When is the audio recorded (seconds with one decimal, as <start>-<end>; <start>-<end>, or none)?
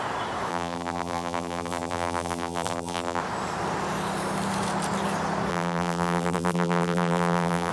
0.0-0.5; 3.2-5.5